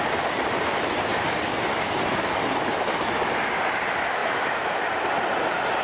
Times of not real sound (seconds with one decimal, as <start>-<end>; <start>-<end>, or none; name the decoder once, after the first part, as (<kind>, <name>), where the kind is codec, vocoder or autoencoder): none